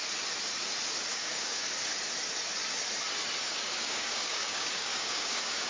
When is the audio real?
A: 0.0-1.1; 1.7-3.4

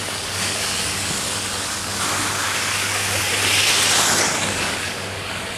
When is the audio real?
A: 3.3-4.2